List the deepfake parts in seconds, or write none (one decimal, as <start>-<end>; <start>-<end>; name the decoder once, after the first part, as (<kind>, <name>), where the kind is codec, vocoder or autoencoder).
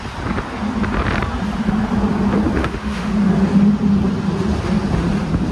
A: 2.6-3.1 (autoencoder, DAC-VAE)